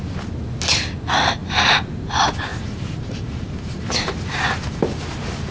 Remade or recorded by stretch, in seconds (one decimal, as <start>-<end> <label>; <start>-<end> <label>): 0.0-1.4 recorded; 1.4-2.1 remade; 2.1-2.5 recorded; 2.5-4.8 remade; 4.8-5.5 recorded